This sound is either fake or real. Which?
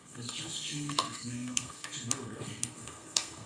fake